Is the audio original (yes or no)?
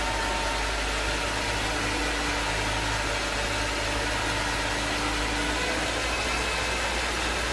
yes